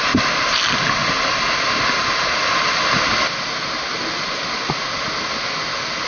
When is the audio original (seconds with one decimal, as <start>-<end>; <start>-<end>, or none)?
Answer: 0.0-6.1